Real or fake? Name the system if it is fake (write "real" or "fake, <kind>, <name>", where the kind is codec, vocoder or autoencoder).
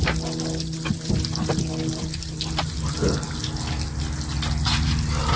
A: real